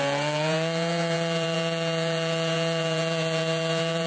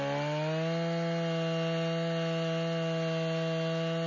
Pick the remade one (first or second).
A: first